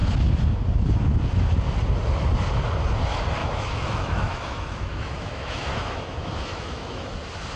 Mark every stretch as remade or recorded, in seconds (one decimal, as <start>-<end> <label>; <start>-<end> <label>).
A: 0.0-3.4 recorded; 3.4-7.1 remade; 7.1-7.6 recorded